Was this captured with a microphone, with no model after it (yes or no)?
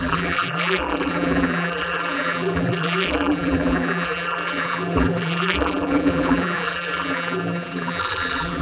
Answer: no